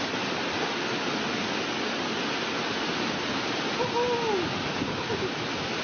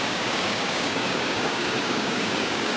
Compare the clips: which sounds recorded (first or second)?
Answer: first